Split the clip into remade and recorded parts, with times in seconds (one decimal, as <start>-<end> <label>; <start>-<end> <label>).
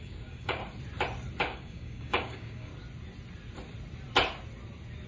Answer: 0.0-0.6 remade; 0.6-1.4 recorded; 1.4-2.7 remade; 2.7-5.1 recorded